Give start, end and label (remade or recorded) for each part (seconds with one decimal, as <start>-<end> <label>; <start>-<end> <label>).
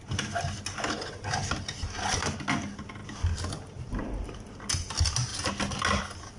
0.0-6.4 recorded